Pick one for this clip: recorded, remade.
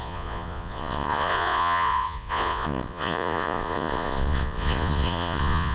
remade